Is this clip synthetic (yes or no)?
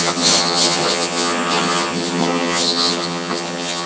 yes